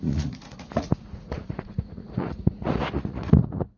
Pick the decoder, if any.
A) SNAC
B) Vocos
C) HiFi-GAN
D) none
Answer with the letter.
B